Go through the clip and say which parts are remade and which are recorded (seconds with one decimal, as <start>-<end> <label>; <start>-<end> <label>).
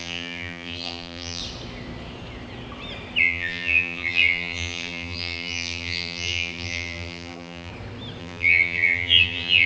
0.0-1.4 remade; 1.4-3.2 recorded; 3.2-7.7 remade; 7.7-8.2 recorded; 8.2-9.7 remade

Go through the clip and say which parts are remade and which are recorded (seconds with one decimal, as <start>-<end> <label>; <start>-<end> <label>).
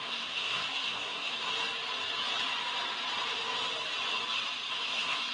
0.0-1.5 remade; 1.5-4.7 recorded; 4.7-5.3 remade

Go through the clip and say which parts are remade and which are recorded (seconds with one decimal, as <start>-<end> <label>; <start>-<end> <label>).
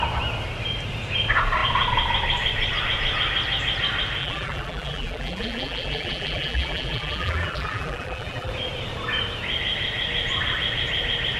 0.0-4.2 recorded; 4.2-8.5 remade; 8.5-11.4 recorded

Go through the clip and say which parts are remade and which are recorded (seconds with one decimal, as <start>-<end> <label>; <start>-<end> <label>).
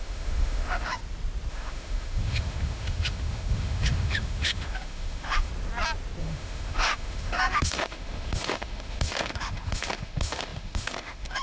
0.0-1.0 remade; 1.0-1.5 recorded; 1.5-5.5 remade; 5.5-6.2 recorded; 6.2-11.4 remade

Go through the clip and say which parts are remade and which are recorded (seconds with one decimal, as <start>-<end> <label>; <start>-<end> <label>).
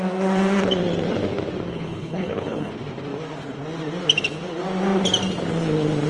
0.0-1.7 recorded; 1.7-2.7 remade; 2.7-6.1 recorded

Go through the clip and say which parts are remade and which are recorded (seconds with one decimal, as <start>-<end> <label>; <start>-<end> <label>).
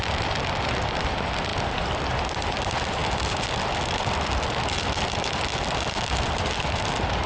0.0-7.3 recorded